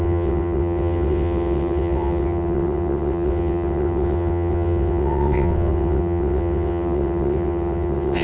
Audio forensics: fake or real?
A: fake